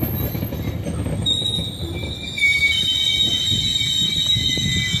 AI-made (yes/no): no